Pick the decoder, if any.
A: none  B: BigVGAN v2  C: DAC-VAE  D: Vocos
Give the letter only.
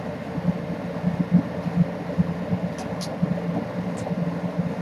A